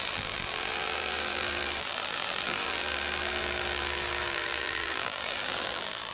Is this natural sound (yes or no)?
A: no